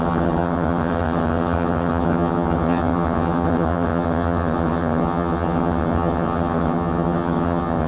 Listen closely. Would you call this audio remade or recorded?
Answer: remade